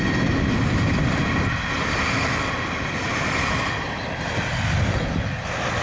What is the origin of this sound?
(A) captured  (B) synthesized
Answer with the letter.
A